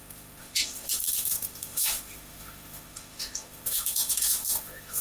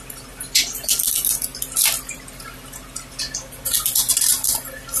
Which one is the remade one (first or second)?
first